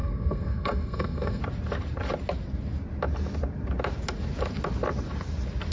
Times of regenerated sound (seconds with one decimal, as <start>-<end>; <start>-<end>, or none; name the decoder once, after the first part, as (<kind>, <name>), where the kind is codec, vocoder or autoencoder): 0.0-1.4 (codec, SNAC)